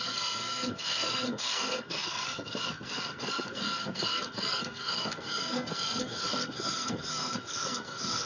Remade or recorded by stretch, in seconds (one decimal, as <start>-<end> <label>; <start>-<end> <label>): 0.0-8.3 remade